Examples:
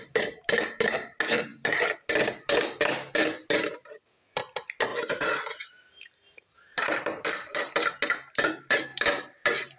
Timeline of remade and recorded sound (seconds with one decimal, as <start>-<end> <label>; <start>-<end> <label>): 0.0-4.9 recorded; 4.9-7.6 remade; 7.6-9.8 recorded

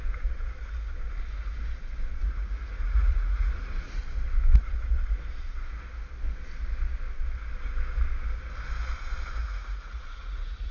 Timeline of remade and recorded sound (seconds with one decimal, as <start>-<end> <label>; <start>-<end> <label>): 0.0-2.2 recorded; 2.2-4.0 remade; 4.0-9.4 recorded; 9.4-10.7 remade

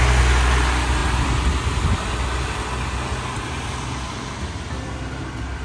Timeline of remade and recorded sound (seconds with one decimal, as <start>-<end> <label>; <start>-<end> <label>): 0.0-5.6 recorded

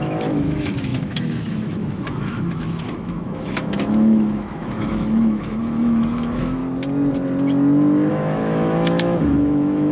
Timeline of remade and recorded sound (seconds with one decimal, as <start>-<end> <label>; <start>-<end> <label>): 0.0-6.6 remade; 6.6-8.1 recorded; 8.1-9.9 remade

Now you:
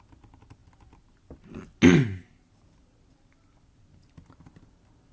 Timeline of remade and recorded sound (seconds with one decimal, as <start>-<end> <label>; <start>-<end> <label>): 0.0-5.1 recorded

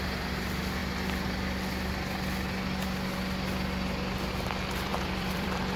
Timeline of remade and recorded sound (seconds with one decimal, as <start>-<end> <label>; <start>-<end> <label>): 0.0-4.9 recorded; 4.9-5.8 remade